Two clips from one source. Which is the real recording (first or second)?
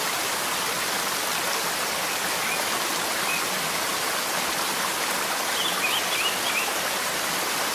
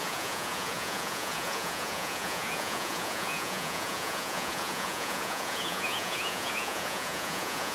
first